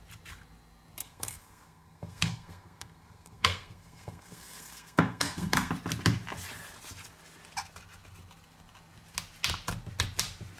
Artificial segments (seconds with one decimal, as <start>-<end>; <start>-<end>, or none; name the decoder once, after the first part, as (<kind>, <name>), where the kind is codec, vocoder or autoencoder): 1.0-5.7 (codec, SNAC)